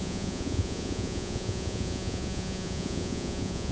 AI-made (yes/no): yes